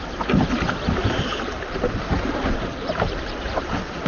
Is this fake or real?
real